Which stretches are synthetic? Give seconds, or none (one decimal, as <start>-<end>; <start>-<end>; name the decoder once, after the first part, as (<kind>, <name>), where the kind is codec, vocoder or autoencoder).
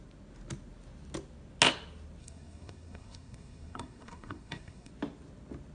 2.2-4.9 (codec, SNAC)